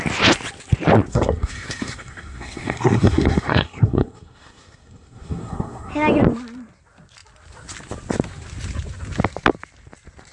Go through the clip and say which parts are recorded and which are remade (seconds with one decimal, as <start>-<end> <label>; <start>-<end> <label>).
0.0-1.1 recorded; 1.1-5.9 remade; 5.9-10.3 recorded